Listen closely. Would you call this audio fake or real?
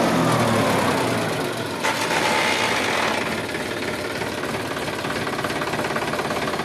real